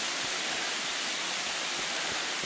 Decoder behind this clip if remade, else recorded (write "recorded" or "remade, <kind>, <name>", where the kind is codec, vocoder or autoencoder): recorded